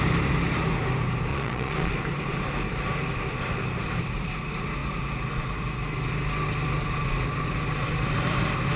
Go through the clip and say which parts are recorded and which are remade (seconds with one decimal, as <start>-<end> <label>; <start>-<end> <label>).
0.0-1.3 recorded; 1.3-1.9 remade; 1.9-8.8 recorded